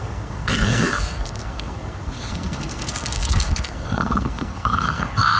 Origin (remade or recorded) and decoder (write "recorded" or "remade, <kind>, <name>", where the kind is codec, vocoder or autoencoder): remade, codec, SNAC